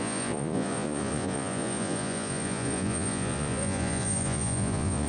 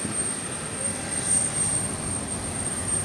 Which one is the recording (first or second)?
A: second